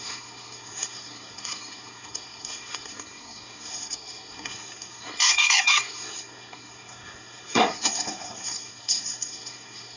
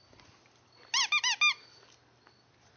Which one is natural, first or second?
second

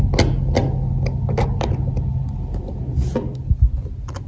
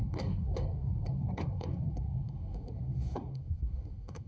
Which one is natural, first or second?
first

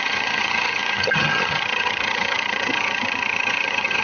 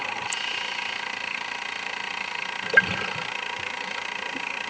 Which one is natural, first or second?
second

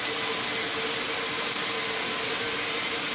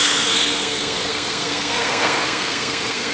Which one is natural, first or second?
first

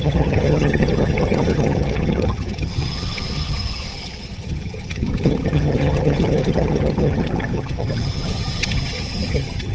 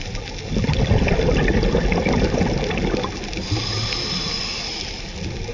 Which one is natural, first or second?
second